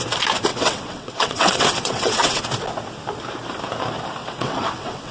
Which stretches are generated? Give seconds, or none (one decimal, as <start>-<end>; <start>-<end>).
0.5-2.4; 4.2-5.1